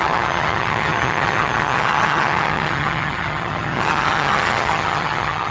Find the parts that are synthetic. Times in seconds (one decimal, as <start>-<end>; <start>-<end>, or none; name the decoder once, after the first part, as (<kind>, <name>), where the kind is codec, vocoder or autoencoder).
0.0-5.5 (vocoder, HiFi-GAN)